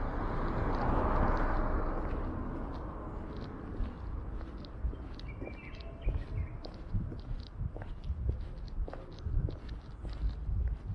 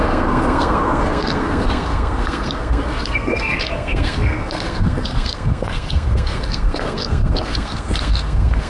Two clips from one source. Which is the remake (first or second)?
second